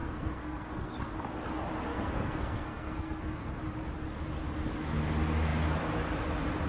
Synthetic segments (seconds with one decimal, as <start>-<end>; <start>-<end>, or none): 0.0-1.1; 1.9-3.6